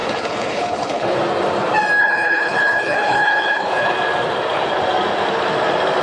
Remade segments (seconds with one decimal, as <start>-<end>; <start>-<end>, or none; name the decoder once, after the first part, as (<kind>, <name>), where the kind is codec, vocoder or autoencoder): 0.0-1.2 (codec, HILCodec); 2.0-3.9